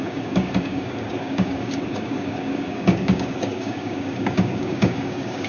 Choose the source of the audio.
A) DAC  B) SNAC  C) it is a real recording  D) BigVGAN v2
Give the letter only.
A